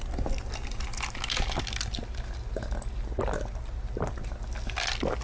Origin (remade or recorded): recorded